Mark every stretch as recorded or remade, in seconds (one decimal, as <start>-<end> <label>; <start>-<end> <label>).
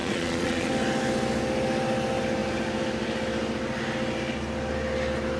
0.0-0.7 remade; 0.7-5.4 recorded